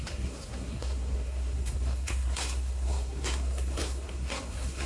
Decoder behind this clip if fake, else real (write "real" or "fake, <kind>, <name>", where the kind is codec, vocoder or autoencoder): fake, codec, SNAC